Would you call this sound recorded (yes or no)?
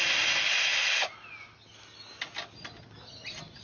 yes